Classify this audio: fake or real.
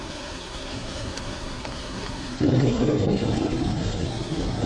fake